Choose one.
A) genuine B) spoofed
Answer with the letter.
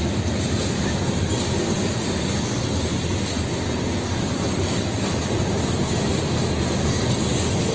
A